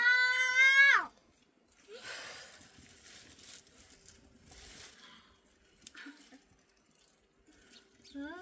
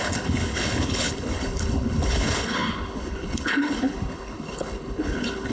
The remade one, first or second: second